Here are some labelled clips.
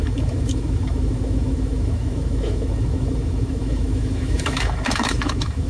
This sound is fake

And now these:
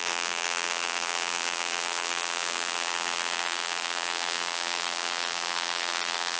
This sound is fake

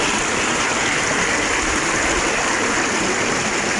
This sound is real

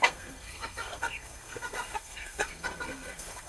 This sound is fake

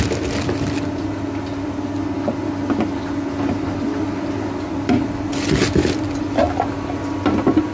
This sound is real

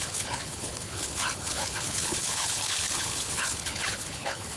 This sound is fake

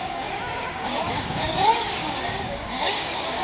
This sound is fake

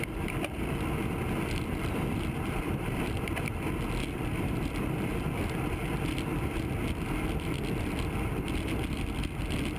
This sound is real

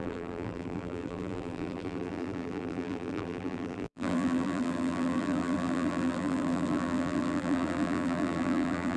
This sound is fake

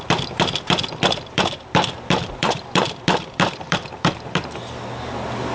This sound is fake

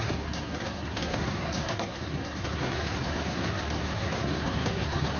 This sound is fake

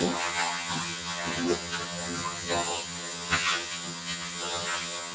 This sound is fake